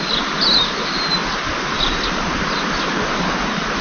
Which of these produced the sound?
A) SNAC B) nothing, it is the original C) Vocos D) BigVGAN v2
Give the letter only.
B